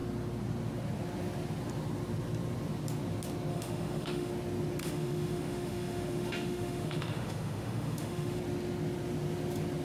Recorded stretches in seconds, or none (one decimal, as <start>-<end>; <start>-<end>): 0.0-3.5; 4.3-4.8; 8.4-9.8